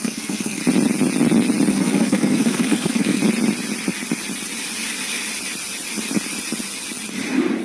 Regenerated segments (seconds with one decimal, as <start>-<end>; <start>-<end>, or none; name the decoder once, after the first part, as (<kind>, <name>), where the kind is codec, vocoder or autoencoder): 0.0-0.6 (codec, SNAC); 1.7-3.2